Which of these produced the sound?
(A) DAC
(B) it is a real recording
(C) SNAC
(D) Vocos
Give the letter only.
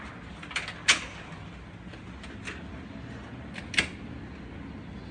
B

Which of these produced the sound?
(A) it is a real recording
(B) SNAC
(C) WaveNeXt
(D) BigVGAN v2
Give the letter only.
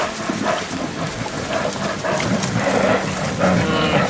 A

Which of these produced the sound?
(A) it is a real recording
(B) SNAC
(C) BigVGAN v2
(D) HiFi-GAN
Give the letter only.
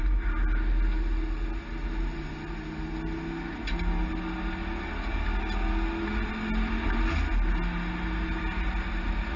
A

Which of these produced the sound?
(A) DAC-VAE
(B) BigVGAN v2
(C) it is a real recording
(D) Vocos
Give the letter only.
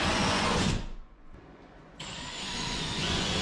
D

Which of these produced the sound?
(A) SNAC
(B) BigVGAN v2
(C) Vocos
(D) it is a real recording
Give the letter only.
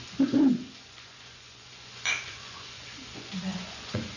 C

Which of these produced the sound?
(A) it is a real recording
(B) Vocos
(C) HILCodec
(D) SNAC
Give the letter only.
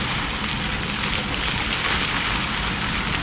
A